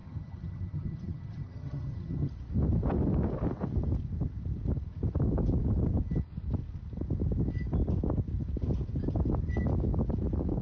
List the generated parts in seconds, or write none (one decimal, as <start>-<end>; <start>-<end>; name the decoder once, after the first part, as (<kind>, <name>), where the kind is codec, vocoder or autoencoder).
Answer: 0.0-2.3 (vocoder, HiFi-GAN)